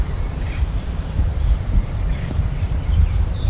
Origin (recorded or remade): remade